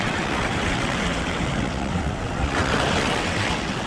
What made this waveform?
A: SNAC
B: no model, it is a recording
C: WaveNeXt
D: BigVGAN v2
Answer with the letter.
C